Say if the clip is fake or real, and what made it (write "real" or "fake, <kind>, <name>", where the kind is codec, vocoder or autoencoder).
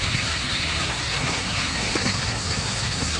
fake, codec, SNAC